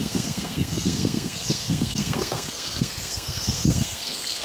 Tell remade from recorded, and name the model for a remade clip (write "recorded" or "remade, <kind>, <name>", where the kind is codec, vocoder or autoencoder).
remade, codec, SNAC